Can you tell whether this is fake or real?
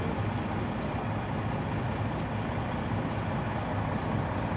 real